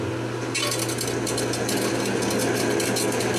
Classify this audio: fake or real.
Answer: real